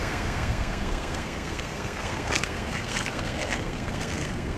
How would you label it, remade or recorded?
remade